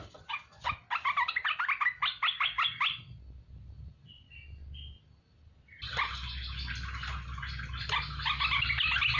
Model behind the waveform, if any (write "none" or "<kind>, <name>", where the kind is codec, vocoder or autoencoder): none